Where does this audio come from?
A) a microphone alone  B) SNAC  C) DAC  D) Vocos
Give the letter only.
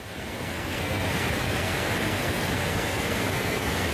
B